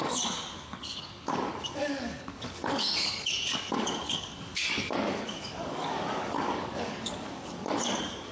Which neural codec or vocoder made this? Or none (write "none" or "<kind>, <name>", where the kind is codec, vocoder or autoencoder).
codec, DAC